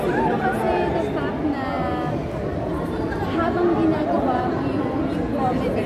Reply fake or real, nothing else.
real